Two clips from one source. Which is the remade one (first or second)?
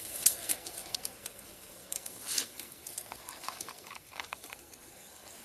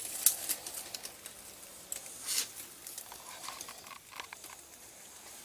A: first